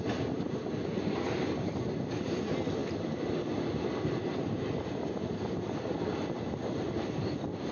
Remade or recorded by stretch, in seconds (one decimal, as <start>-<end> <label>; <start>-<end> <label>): 0.0-7.7 recorded